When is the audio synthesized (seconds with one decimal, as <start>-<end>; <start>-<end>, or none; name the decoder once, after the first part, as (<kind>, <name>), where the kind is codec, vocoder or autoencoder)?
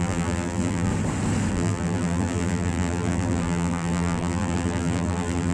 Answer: 0.0-0.9 (vocoder, BigVGAN v2); 1.5-5.5